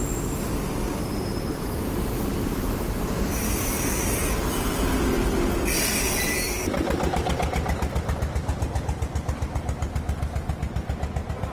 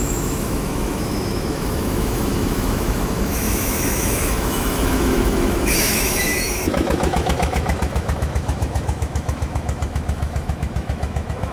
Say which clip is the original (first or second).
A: first